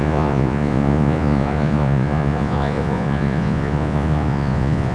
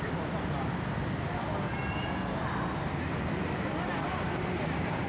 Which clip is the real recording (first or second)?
second